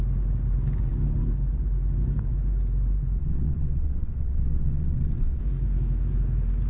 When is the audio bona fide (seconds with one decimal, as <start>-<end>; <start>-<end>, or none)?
0.0-3.2; 5.4-6.7